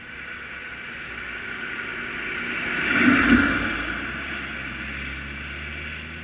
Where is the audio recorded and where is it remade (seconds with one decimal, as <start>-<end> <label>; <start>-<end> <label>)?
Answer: 0.0-6.2 recorded

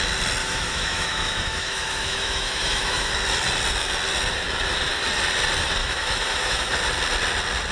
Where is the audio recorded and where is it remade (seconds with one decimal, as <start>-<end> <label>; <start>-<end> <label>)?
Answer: 0.0-0.4 recorded; 0.4-3.1 remade; 3.1-5.8 recorded; 5.8-6.7 remade; 6.7-7.7 recorded

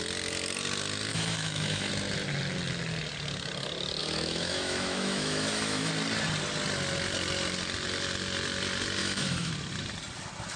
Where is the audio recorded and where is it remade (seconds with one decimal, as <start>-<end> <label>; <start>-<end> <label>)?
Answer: 0.0-1.1 recorded; 1.1-1.9 remade; 1.9-4.0 recorded; 4.0-5.9 remade; 5.9-9.0 recorded; 9.0-9.5 remade; 9.5-10.6 recorded

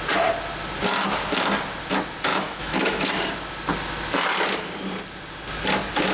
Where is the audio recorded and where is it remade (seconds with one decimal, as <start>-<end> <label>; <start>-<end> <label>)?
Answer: 0.0-2.3 recorded; 2.3-3.1 remade; 3.1-6.1 recorded

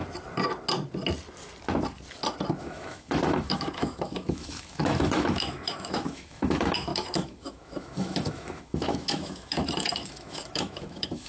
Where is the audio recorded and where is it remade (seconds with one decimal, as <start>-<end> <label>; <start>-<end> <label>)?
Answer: 0.0-2.6 recorded; 2.6-11.3 remade

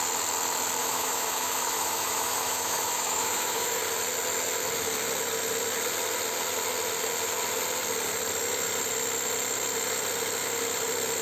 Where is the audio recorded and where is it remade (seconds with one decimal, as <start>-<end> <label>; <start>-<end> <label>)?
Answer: 0.0-0.8 recorded; 0.8-3.8 remade; 3.8-11.2 recorded